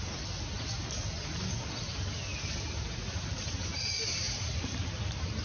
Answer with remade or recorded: recorded